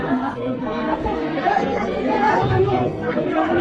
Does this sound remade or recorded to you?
remade